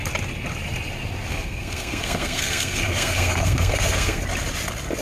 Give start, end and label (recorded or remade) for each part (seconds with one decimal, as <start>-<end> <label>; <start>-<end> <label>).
0.0-1.3 recorded; 1.3-4.2 remade; 4.2-5.0 recorded